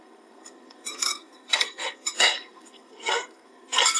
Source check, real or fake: fake